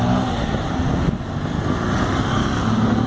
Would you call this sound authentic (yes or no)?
yes